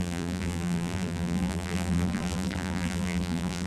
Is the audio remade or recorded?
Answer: remade